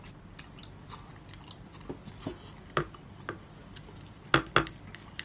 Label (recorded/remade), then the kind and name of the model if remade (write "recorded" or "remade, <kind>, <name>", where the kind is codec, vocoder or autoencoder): recorded